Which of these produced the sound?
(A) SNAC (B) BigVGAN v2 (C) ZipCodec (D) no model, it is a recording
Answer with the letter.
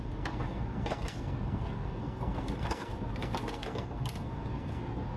A